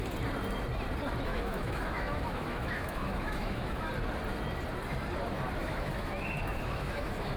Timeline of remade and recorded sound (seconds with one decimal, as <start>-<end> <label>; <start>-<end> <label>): 0.0-1.3 recorded; 1.3-3.9 remade; 3.9-5.6 recorded; 5.6-7.4 remade